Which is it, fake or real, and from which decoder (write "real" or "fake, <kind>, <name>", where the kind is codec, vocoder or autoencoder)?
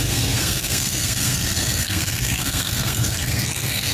fake, codec, SNAC